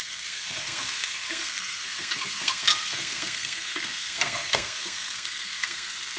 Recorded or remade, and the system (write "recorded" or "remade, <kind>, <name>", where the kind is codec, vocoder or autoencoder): remade, codec, SNAC